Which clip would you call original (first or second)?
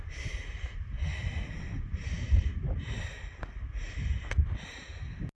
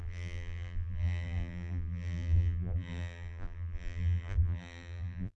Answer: first